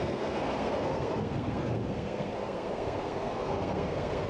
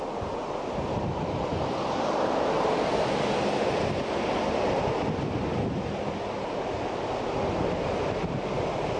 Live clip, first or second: second